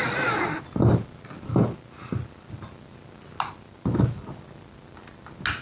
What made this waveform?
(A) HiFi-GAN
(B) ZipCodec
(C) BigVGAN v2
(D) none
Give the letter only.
D